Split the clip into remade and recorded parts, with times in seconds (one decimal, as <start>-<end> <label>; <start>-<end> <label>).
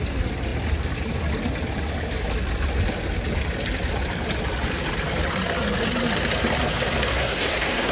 0.0-7.1 recorded; 7.1-7.9 remade